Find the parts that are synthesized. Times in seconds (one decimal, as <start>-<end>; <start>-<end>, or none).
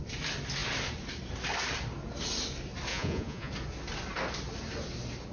2.9-3.5